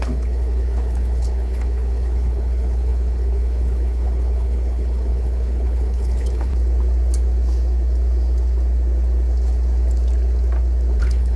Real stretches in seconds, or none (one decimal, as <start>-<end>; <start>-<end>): 6.5-11.0